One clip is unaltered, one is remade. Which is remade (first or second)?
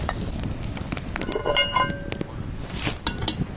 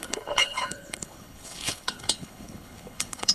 second